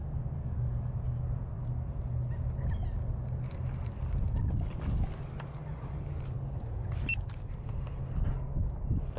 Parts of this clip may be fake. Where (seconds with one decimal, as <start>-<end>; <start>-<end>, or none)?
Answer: 0.0-0.9